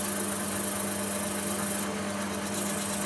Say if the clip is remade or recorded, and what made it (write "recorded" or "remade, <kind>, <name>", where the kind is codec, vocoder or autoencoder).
recorded